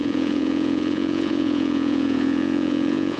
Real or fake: fake